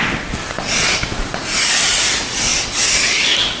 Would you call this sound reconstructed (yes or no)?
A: no